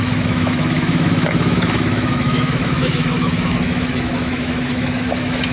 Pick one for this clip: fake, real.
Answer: fake